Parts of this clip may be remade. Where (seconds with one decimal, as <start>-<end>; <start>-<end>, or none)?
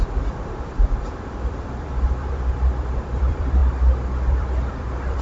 0.0-3.6; 4.3-5.2